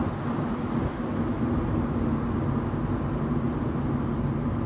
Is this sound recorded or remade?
recorded